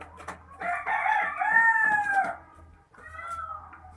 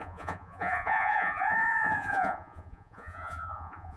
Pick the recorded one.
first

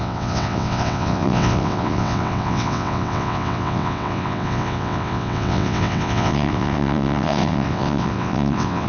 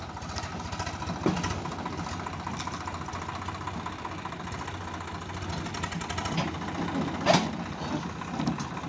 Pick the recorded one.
second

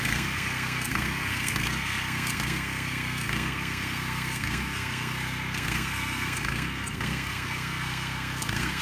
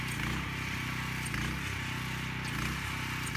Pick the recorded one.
second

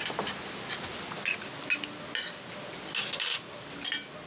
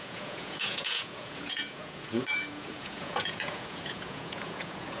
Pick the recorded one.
first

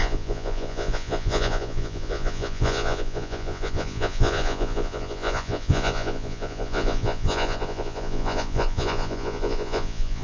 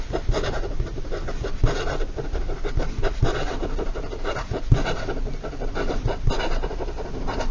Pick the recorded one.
second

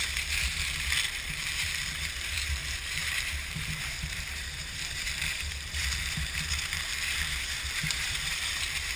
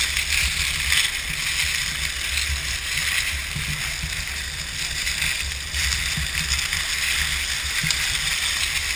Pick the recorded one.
second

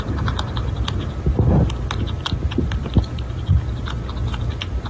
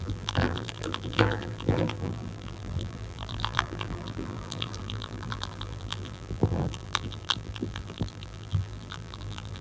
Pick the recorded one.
first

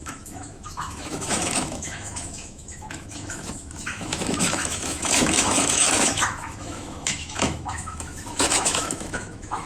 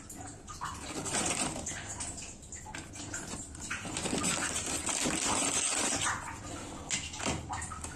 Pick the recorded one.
second